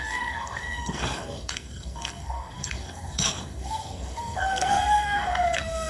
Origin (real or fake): fake